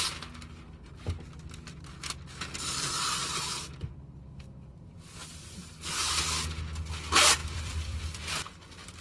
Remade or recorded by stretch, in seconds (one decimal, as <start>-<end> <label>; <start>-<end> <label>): 0.0-3.2 recorded; 3.2-3.9 remade; 3.9-7.4 recorded; 7.4-8.3 remade; 8.3-9.0 recorded